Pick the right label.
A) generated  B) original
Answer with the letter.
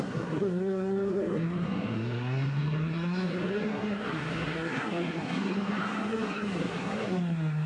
A